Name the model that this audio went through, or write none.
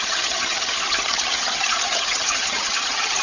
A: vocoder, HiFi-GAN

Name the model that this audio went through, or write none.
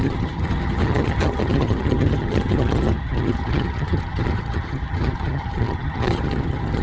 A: vocoder, HiFi-GAN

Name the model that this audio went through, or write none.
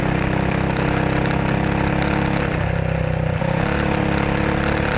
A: none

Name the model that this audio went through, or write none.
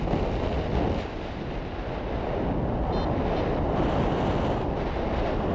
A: none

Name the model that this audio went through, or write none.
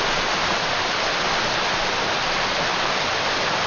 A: none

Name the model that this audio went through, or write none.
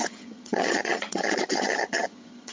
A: vocoder, HiFi-GAN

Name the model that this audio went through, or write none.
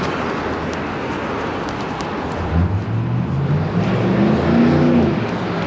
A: none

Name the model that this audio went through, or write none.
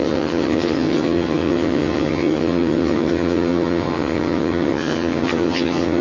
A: vocoder, HiFi-GAN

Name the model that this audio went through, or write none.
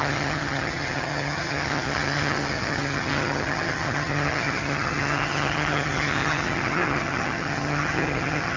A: vocoder, HiFi-GAN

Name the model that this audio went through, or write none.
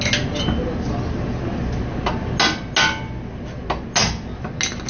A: none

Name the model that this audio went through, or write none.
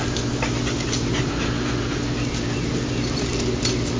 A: none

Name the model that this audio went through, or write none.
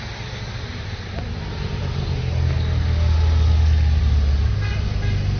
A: none